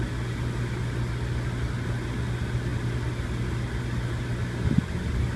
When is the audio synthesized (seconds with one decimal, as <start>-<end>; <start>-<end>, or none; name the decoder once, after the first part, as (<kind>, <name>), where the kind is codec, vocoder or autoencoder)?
none